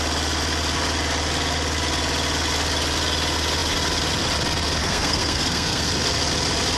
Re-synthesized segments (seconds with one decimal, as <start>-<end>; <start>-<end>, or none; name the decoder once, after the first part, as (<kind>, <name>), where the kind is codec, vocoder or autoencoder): 4.8-5.9 (codec, SNAC)